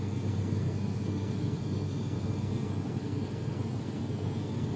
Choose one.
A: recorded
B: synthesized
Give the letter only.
B